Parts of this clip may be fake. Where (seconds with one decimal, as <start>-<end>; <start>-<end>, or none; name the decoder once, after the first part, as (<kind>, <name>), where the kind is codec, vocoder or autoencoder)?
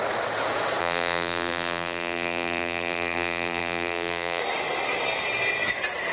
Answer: 0.8-4.4 (vocoder, BigVGAN v2)